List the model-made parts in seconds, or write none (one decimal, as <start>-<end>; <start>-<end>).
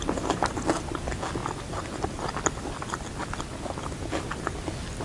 none